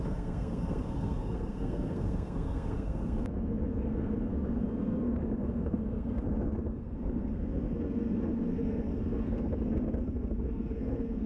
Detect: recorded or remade remade